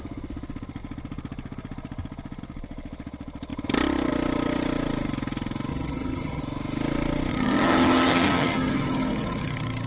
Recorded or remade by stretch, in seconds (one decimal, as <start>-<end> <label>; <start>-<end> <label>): 0.0-5.7 recorded; 5.7-6.4 remade; 6.4-7.3 recorded; 7.3-9.9 remade